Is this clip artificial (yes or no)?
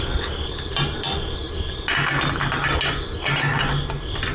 no